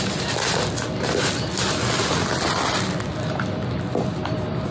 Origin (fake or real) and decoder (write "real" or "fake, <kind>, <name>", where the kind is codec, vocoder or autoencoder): real